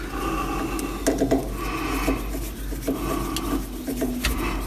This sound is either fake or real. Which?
real